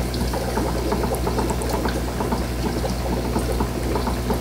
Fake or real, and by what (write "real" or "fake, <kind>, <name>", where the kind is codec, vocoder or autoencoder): real